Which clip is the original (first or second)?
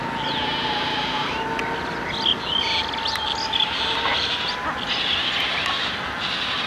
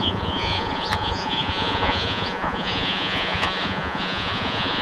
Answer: first